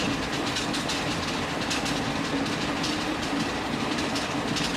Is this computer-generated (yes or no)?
no